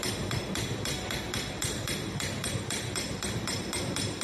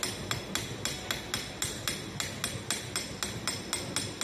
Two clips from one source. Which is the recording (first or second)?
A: second